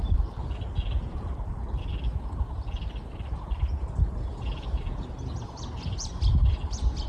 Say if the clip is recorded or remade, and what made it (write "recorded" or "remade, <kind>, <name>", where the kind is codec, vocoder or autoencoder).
recorded